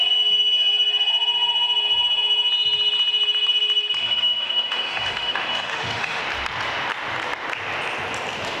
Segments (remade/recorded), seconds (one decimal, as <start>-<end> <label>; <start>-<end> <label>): 0.0-4.0 recorded; 4.0-6.2 remade; 6.2-8.6 recorded